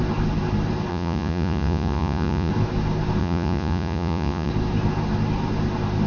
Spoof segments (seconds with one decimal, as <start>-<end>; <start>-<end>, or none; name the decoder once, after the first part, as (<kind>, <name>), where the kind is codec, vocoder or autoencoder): 0.9-2.5 (vocoder, Vocos); 3.2-4.5